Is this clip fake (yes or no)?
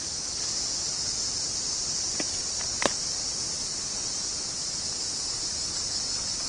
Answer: no